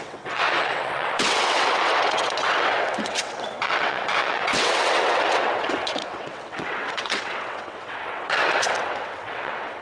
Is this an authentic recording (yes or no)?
no